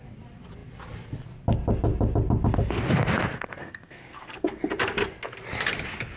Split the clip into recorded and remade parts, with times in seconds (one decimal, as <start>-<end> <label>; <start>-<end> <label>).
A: 0.0-3.3 recorded; 3.3-4.7 remade; 4.7-6.2 recorded